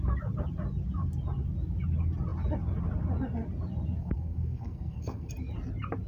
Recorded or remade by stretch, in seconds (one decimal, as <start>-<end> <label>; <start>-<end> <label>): 0.0-4.0 recorded; 4.0-5.3 remade; 5.3-6.1 recorded